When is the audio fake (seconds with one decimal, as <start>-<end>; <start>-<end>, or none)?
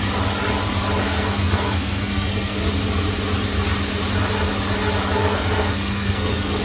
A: 1.0-2.7; 5.2-6.6